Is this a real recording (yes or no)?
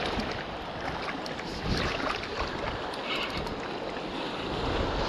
yes